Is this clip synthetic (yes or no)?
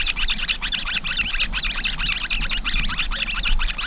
no